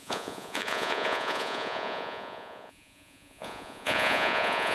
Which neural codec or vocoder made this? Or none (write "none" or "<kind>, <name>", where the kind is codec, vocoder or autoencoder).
vocoder, Vocos